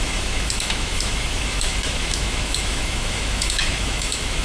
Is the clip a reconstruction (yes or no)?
yes